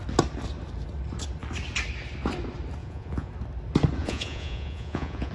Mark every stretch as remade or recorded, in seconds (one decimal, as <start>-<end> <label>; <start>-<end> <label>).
0.0-2.8 recorded; 2.8-3.3 remade; 3.3-4.0 recorded; 4.0-5.3 remade